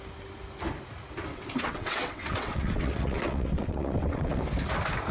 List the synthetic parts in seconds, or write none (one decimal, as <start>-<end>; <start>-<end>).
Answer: 1.3-4.4